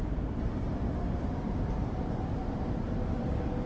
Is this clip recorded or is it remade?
recorded